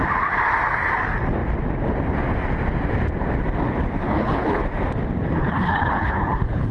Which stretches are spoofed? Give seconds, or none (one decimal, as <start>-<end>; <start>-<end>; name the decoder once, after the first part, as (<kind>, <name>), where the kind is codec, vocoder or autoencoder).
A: 4.0-4.6 (codec, HILCodec); 5.4-6.7